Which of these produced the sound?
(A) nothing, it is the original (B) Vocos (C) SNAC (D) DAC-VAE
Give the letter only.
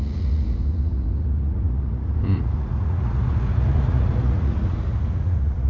B